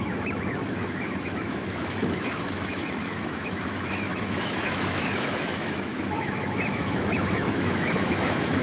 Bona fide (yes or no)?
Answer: no